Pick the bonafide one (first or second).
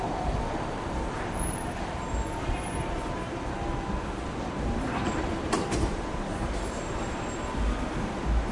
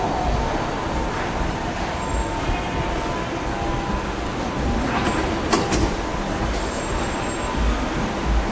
second